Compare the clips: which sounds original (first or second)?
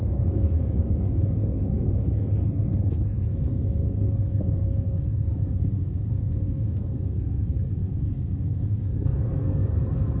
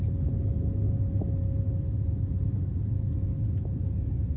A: second